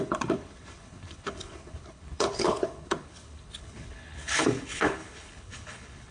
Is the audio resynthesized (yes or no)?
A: yes